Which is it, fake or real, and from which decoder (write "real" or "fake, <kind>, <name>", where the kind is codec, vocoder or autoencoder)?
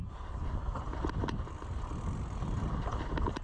real